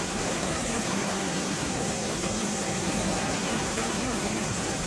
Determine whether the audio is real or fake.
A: fake